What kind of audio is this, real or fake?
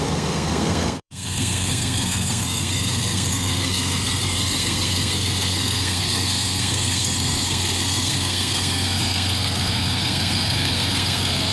fake